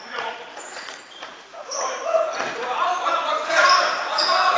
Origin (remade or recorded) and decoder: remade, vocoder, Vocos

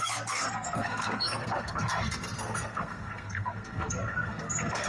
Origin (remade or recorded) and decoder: remade, codec, SNAC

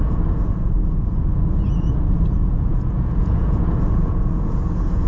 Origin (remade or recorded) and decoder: remade, vocoder, Vocos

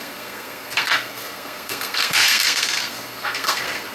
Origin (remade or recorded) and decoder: remade, codec, SNAC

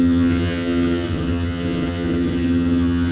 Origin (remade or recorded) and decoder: remade, vocoder, HiFi-GAN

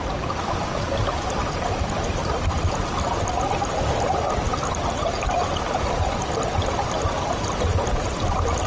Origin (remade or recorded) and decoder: recorded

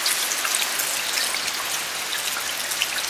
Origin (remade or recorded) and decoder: recorded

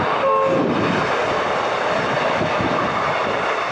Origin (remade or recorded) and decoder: recorded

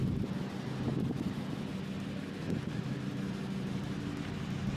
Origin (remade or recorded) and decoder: recorded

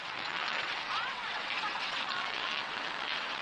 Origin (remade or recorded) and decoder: remade, vocoder, WaveNeXt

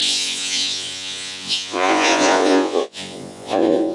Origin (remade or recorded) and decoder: remade, vocoder, Vocos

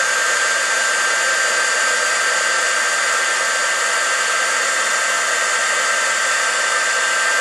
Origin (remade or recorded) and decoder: recorded